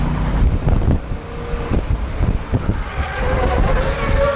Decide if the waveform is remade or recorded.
recorded